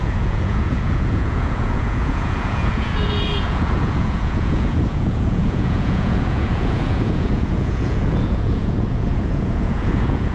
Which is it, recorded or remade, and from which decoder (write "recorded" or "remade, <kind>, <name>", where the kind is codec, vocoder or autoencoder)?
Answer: remade, vocoder, Vocos